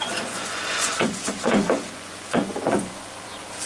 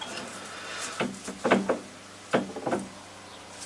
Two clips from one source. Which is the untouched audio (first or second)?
second